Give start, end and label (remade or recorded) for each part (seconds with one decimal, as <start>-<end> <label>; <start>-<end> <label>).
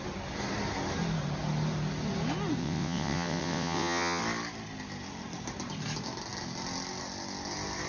0.0-2.6 recorded; 2.6-4.2 remade; 4.2-7.9 recorded